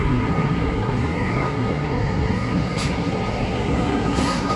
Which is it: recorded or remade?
remade